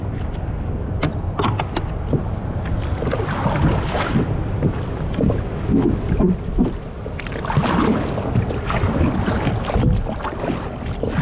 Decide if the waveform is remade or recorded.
recorded